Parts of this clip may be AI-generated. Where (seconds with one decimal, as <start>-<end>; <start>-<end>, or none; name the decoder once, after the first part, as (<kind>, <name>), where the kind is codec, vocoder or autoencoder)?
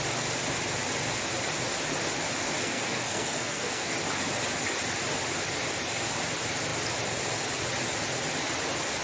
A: 2.6-3.9 (codec, SNAC)